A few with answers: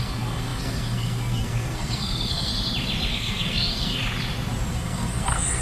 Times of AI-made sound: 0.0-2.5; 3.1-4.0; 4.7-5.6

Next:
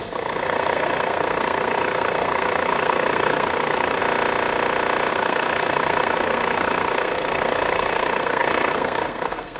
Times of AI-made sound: 0.0-4.0; 5.1-9.6

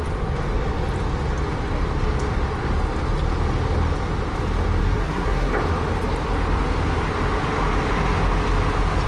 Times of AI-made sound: 4.8-5.5

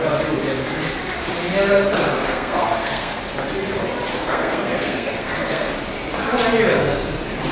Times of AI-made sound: 2.1-3.2; 4.1-5.7